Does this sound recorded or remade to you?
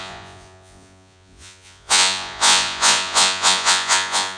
remade